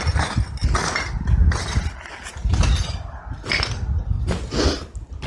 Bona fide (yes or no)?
yes